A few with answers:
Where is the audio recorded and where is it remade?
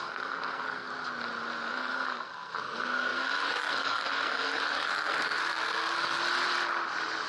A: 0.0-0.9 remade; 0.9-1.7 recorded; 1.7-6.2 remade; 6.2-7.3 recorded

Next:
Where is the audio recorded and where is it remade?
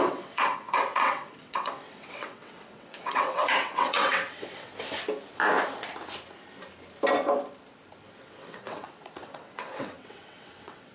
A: 0.0-4.7 remade; 4.7-8.2 recorded; 8.2-10.9 remade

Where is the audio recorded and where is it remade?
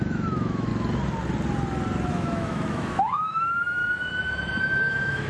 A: 0.0-0.7 remade; 0.7-2.1 recorded; 2.1-3.8 remade; 3.8-4.6 recorded; 4.6-5.3 remade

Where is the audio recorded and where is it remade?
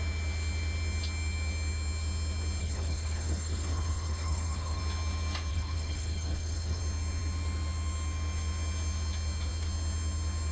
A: 0.0-2.6 recorded; 2.6-4.8 remade; 4.8-5.5 recorded; 5.5-6.8 remade; 6.8-10.5 recorded